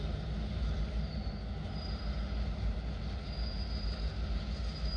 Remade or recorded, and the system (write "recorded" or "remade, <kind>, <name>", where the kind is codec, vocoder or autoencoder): recorded